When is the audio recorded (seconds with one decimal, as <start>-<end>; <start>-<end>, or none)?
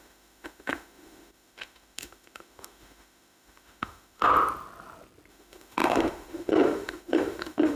4.3-5.3